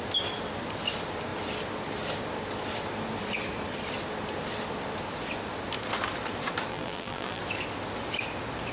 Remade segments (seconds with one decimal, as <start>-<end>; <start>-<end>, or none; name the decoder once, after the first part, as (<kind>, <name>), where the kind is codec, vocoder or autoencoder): 6.7-7.4 (vocoder, BigVGAN v2)